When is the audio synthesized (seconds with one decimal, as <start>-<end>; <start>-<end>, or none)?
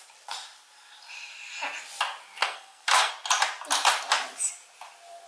2.4-3.1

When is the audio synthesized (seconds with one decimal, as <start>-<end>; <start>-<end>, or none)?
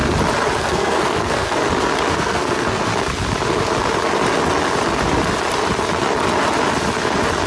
0.6-1.6; 2.1-2.9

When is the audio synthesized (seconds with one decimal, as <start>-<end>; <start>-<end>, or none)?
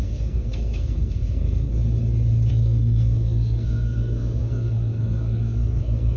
0.0-1.7; 2.5-6.2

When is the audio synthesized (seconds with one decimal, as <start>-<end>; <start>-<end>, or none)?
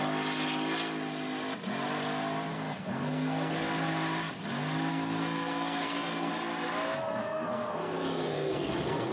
2.5-3.5; 4.9-6.3; 7.2-9.1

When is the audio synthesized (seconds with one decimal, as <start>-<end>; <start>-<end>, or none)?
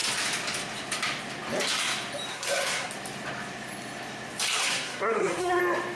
2.3-2.9; 4.6-5.6